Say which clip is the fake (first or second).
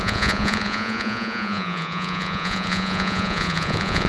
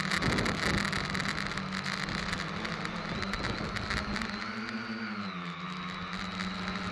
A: first